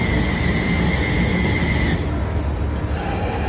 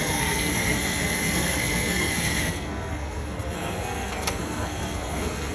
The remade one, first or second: second